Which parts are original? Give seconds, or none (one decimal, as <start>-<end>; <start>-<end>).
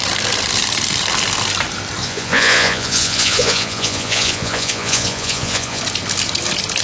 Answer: 0.0-2.0; 5.8-6.8